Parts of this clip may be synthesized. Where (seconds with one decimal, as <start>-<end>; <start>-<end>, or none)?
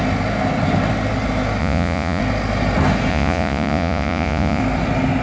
1.6-2.2; 3.1-4.6